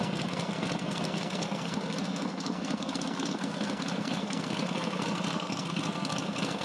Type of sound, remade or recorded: remade